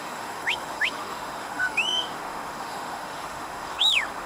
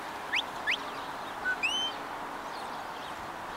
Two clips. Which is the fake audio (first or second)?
first